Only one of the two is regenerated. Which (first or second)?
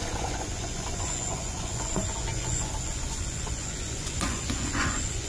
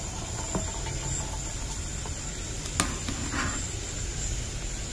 first